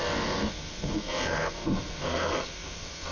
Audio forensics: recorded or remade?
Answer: remade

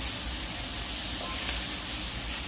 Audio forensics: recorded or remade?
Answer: recorded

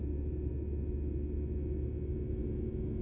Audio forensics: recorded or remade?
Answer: recorded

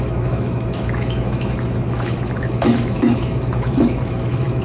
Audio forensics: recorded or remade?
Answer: remade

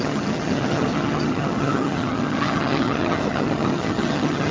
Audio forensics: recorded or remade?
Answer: remade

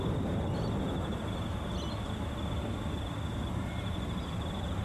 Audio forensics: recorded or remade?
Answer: recorded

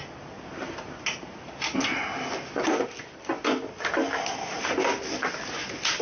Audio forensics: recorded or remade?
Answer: recorded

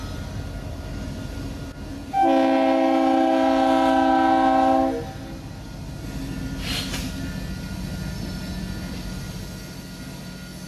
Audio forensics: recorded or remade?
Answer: recorded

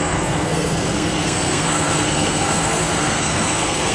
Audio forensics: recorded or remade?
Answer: remade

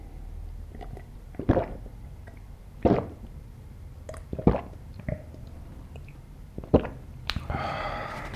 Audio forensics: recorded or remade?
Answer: remade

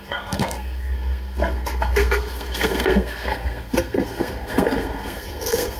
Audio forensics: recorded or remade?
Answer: remade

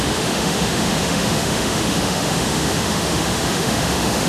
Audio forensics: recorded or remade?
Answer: remade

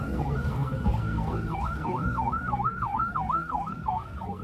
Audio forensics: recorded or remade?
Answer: remade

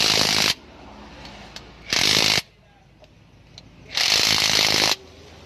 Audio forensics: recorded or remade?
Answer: recorded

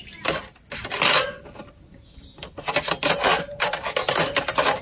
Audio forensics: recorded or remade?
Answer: recorded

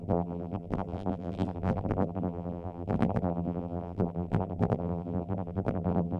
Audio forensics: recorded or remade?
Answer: remade